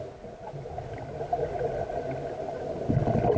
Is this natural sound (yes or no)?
yes